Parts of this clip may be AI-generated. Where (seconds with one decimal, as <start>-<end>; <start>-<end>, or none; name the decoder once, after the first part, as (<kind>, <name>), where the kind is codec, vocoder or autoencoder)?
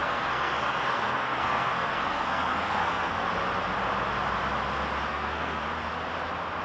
0.0-3.3 (codec, SNAC); 5.1-5.6